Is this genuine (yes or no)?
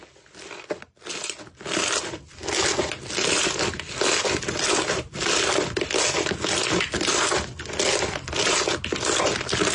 yes